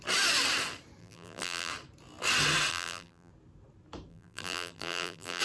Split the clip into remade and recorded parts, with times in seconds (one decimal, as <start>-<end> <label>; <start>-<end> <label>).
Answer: 0.0-1.0 recorded; 1.0-1.7 remade; 1.7-2.7 recorded; 2.7-3.3 remade; 3.3-4.1 recorded; 4.1-5.4 remade